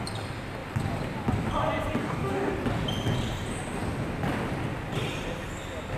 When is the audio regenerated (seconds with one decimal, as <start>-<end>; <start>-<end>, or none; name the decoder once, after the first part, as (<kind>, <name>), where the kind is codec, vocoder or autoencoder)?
2.0-2.5 (codec, DAC)